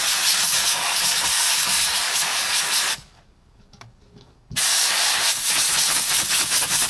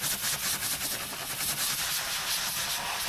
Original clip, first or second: second